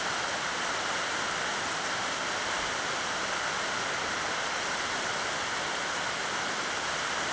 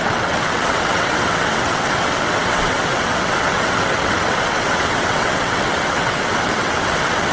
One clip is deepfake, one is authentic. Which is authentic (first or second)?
first